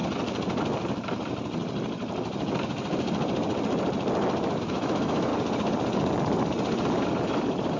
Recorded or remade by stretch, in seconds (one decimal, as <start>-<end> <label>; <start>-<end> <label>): 0.0-4.6 recorded; 4.6-5.3 remade; 5.3-7.8 recorded